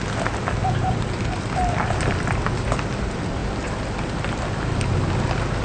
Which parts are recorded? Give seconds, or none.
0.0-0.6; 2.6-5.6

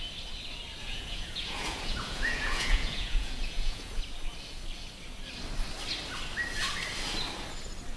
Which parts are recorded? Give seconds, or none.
0.0-0.8; 4.0-8.0

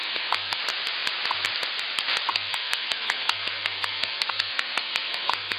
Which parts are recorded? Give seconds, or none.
0.6-2.3